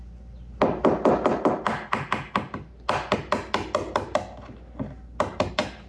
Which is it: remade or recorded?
recorded